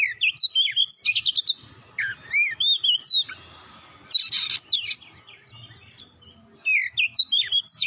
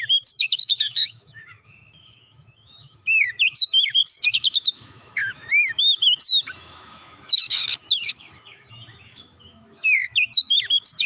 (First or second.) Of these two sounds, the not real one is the second